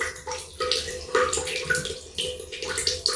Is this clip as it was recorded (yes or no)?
yes